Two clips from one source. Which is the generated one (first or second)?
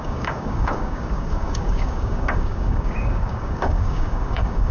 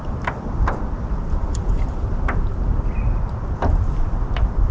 first